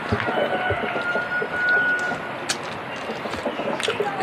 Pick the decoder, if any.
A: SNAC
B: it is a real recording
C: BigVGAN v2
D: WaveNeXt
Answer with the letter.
B